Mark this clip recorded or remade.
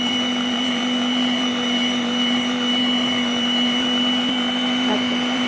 remade